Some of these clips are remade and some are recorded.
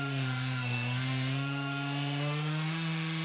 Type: remade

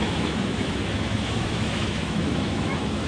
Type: remade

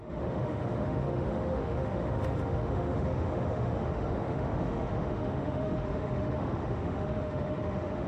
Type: remade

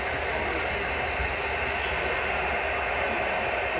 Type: recorded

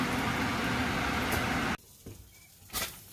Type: recorded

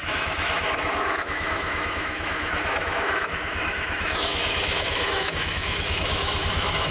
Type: remade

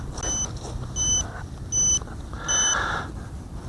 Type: recorded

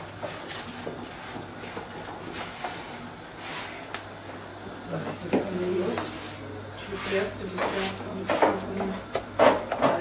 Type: recorded